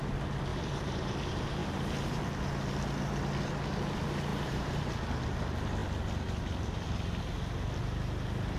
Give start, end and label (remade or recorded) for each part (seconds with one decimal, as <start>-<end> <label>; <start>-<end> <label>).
0.0-0.5 recorded; 0.5-1.1 remade; 1.1-1.6 recorded; 1.6-2.2 remade; 2.2-4.3 recorded; 4.3-4.8 remade; 4.8-8.6 recorded